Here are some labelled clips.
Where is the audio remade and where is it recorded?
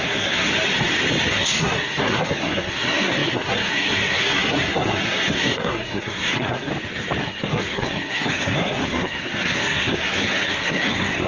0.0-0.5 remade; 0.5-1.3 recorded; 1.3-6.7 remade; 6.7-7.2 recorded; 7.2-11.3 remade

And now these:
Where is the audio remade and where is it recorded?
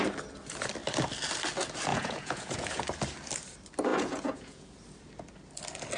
0.0-1.9 recorded; 1.9-2.8 remade; 2.8-3.9 recorded; 3.9-4.7 remade; 4.7-6.0 recorded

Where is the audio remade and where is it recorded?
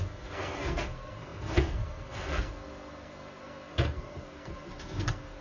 0.0-5.4 remade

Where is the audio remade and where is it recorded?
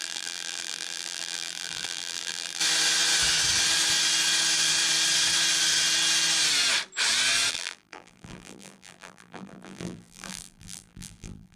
0.0-2.6 remade; 2.6-7.5 recorded; 7.5-11.6 remade